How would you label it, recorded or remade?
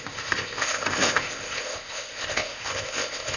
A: remade